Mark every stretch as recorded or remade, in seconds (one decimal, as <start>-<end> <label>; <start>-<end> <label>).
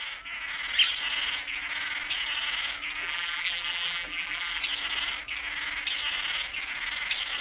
0.0-3.0 recorded; 3.0-4.6 remade; 4.6-7.4 recorded